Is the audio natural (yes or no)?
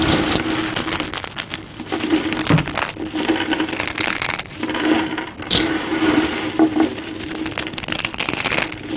yes